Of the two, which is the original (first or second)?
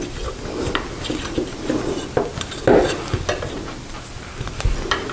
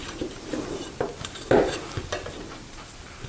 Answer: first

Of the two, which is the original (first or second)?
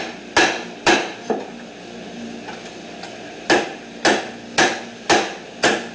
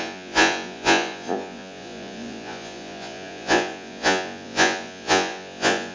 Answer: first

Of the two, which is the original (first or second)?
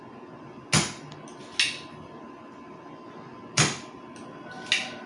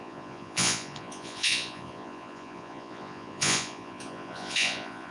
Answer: first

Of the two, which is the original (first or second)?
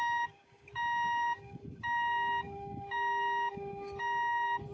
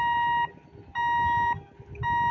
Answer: second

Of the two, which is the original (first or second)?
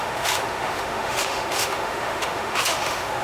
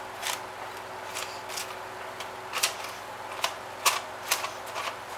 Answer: second